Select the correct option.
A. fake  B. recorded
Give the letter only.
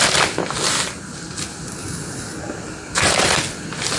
B